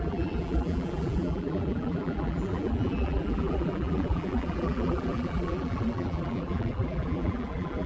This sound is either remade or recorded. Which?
remade